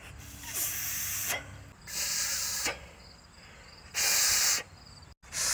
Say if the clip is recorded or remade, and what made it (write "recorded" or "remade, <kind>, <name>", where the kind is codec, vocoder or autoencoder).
recorded